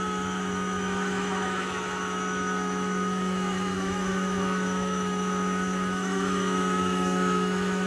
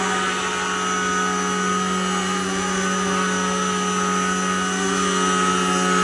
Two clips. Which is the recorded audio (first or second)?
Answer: second